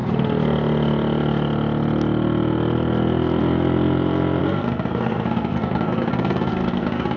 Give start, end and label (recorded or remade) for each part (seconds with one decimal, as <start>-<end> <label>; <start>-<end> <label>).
0.0-4.4 recorded; 4.4-7.2 remade